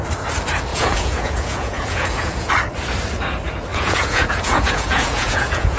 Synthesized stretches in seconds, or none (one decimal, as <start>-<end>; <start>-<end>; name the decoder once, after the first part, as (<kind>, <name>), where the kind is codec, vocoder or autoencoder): 0.7-2.5 (vocoder, Vocos); 3.7-5.8